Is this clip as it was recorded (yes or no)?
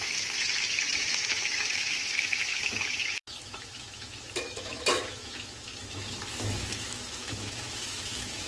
no